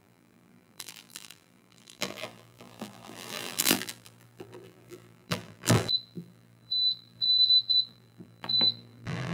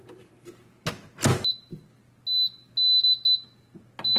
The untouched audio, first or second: second